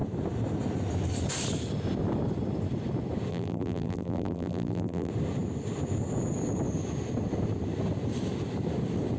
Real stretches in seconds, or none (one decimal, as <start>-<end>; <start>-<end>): 0.0-3.3; 5.1-9.2